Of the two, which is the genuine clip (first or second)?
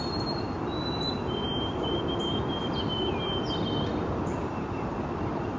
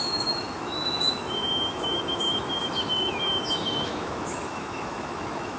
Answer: first